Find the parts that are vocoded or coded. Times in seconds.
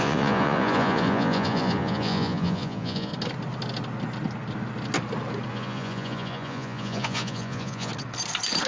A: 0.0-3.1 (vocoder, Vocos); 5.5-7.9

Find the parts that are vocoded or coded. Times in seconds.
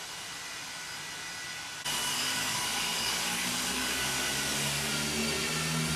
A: 2.0-4.9 (codec, DAC)